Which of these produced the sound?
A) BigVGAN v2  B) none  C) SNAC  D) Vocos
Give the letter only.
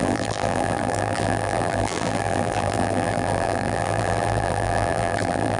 A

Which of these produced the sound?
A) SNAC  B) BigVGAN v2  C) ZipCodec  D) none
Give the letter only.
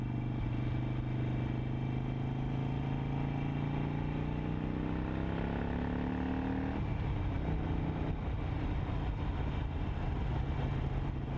D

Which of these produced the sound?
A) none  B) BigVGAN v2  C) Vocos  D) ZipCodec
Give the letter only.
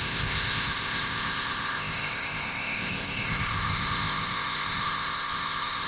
D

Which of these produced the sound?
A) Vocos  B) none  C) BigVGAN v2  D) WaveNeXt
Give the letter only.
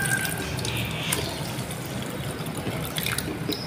B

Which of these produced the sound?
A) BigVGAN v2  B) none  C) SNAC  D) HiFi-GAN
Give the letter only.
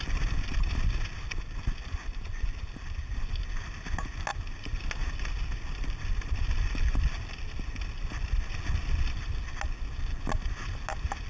B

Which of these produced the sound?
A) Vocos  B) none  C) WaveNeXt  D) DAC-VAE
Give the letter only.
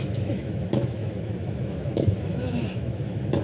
D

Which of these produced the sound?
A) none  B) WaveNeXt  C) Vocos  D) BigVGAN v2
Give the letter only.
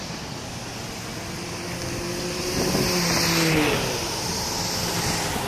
A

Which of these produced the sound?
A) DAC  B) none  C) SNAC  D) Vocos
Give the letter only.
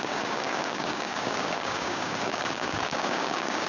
A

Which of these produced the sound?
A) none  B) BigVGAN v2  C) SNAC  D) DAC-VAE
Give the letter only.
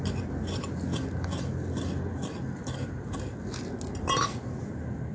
A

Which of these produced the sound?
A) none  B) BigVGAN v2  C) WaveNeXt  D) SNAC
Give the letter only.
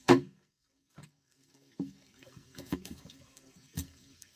D